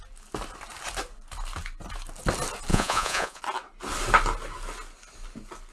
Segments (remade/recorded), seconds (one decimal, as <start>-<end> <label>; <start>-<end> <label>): 0.0-2.7 recorded; 2.7-3.4 remade; 3.4-5.7 recorded